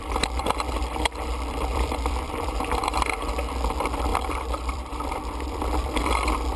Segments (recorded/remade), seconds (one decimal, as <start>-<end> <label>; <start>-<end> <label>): 0.0-1.7 recorded; 1.7-2.6 remade; 2.6-4.1 recorded; 4.1-5.6 remade; 5.6-6.6 recorded